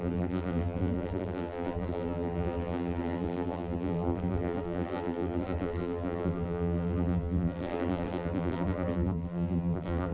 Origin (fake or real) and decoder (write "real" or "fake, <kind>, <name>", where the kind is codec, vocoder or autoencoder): fake, vocoder, BigVGAN v2